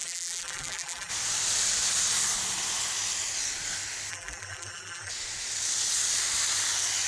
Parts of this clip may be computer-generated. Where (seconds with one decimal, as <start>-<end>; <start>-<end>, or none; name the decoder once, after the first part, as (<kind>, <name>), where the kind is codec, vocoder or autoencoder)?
0.0-1.1 (vocoder, BigVGAN v2); 4.1-5.1